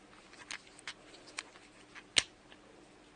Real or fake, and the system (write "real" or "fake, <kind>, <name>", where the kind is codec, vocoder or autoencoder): real